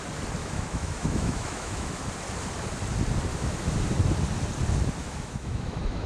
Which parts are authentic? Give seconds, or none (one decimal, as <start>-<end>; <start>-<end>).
0.0-0.4; 2.0-3.3; 3.8-5.0